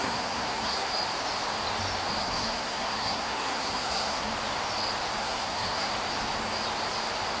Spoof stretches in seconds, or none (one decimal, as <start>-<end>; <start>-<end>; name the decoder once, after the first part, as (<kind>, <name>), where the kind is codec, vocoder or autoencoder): 0.0-0.9 (codec, SNAC); 2.2-4.3; 5.2-5.9